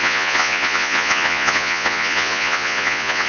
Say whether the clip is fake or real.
fake